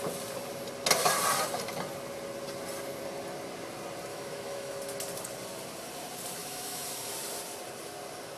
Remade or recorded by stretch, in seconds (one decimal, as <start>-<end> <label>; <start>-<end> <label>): 0.0-4.1 recorded; 4.1-4.7 remade; 4.7-6.4 recorded; 6.4-7.1 remade; 7.1-8.4 recorded